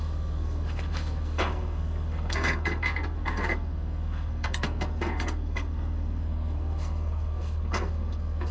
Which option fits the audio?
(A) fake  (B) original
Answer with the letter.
A